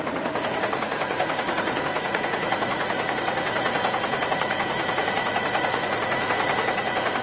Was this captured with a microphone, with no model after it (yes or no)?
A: no